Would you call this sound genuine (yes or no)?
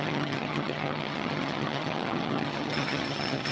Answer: no